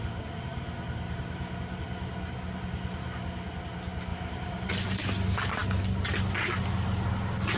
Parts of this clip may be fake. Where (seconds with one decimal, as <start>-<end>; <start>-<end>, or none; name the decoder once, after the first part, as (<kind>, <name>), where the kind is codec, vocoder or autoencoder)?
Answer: 4.1-4.7 (vocoder, BigVGAN v2)